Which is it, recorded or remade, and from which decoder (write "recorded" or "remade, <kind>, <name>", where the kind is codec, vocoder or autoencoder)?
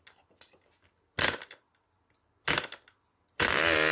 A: recorded